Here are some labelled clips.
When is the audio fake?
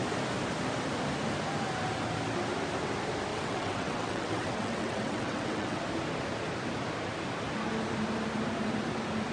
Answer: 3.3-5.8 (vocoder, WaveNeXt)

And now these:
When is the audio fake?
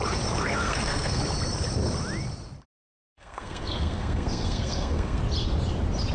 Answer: 0.4-1.2 (codec, SNAC); 3.1-5.2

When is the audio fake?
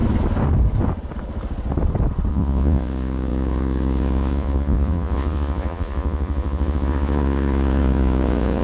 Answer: 2.3-8.6 (vocoder, Vocos)